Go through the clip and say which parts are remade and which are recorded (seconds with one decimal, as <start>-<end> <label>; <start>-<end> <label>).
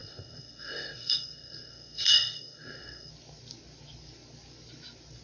0.0-3.1 remade; 3.1-5.2 recorded